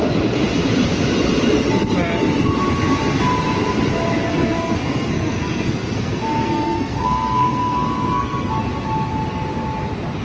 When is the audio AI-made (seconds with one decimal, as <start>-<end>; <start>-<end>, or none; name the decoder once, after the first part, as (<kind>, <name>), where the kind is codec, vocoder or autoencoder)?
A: 4.2-8.5 (codec, SNAC)